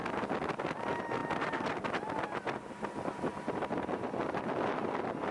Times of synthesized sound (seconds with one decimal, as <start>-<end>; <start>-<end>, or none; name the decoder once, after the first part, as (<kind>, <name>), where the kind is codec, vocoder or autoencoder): none